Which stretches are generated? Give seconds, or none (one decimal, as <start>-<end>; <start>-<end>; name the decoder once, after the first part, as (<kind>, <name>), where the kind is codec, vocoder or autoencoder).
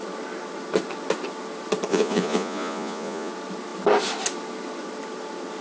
1.9-3.3 (vocoder, Vocos)